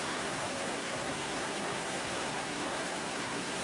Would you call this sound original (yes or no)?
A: no